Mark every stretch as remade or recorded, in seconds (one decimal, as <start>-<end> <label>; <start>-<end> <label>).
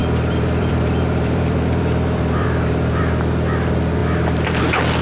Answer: 0.0-3.0 remade; 3.0-4.0 recorded; 4.0-4.6 remade; 4.6-5.0 recorded